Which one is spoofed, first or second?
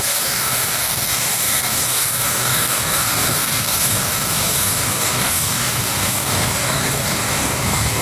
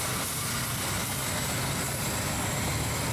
first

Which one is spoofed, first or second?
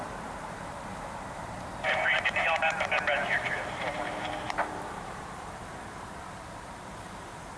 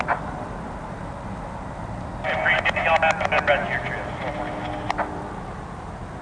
first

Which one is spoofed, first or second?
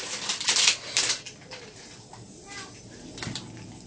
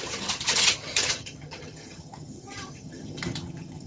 second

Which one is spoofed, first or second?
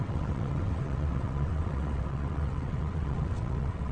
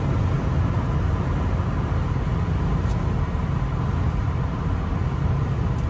first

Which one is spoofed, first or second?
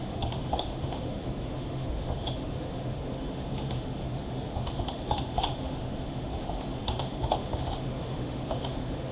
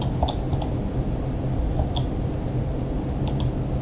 first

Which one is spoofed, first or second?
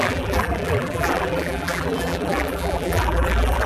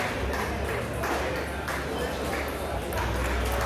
first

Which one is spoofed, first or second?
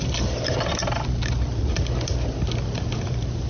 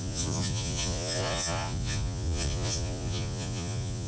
second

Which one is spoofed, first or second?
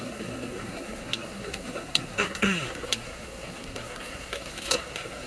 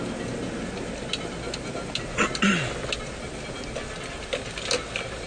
first